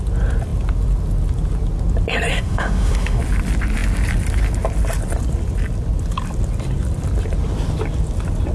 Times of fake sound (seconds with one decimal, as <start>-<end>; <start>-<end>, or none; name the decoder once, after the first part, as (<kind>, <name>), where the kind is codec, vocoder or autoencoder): 2.3-3.2 (autoencoder, DAC-VAE)